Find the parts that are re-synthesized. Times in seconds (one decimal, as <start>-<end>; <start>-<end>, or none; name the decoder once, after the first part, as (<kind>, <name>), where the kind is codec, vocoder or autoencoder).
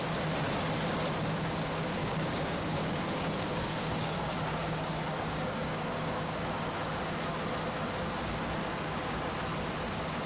2.0-6.7 (codec, DAC); 8.6-9.3